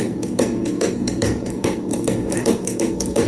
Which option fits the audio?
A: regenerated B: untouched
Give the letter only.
A